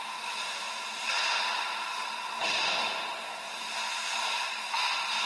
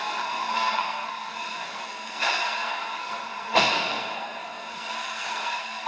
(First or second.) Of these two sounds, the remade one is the second